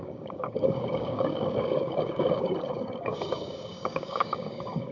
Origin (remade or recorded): remade